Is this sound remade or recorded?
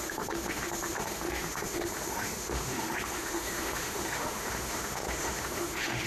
remade